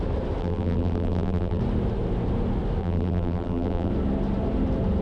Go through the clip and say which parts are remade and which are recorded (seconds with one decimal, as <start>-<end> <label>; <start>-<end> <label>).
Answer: 0.0-0.4 recorded; 0.4-1.6 remade; 1.6-2.8 recorded; 2.8-3.9 remade; 3.9-5.0 recorded